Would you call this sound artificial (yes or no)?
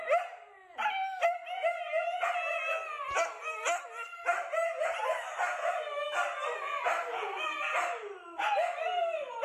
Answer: no